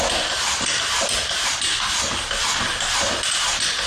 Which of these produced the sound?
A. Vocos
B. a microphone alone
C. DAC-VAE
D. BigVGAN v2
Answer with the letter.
B